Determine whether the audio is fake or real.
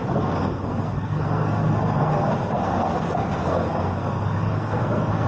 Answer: fake